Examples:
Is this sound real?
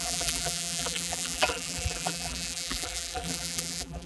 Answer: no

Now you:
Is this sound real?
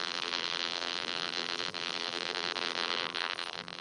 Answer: no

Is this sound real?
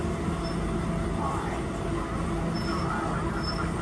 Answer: yes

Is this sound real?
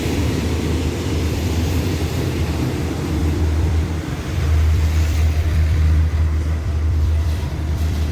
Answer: no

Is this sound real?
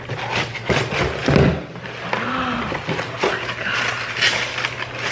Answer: yes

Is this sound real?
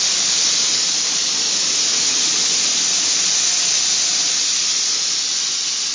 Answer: no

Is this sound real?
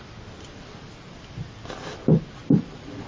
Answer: no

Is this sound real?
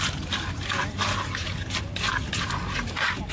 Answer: yes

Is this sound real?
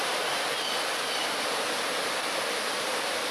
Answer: yes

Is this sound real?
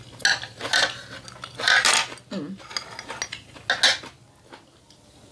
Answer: yes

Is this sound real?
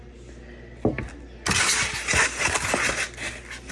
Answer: yes